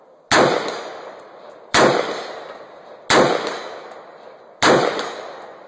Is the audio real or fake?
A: real